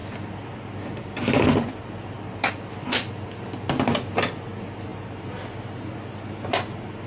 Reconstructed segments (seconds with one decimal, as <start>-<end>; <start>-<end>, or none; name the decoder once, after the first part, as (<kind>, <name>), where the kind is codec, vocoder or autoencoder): none